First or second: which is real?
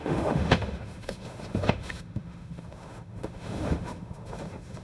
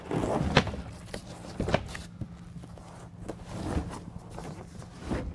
second